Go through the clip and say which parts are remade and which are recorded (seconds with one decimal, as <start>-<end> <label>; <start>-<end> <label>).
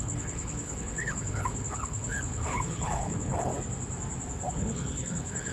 0.0-3.5 remade; 3.5-4.5 recorded; 4.5-5.5 remade